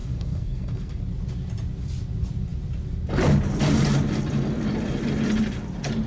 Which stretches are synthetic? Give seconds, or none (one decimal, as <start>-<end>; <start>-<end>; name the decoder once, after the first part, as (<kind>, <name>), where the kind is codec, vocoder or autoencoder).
0.0-1.0 (codec, SNAC)